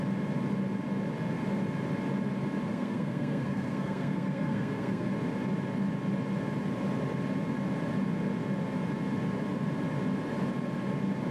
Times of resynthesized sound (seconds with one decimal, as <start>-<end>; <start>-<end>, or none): 2.7-5.1